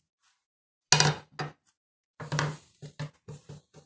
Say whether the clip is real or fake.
real